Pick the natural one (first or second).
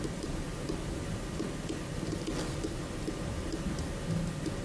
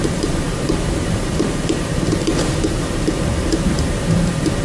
first